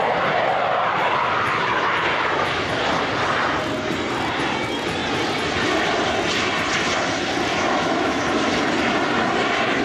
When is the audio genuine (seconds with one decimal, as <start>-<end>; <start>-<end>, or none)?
0.0-7.5; 8.2-9.8